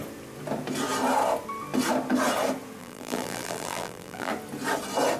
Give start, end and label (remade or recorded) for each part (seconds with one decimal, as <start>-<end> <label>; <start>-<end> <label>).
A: 0.0-2.8 recorded; 2.8-4.3 remade; 4.3-5.2 recorded